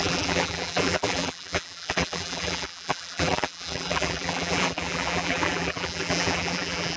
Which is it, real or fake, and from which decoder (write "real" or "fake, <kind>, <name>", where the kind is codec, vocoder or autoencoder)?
fake, vocoder, BigVGAN v2